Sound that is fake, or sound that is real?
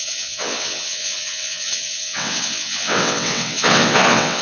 fake